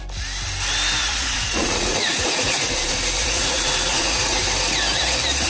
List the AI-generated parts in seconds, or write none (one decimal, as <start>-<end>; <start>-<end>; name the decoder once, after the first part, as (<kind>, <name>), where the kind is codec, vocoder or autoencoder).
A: 1.0-2.7 (vocoder, Vocos); 3.2-4.4